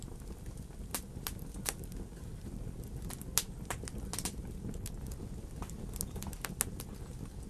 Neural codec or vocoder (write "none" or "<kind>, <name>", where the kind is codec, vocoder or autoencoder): none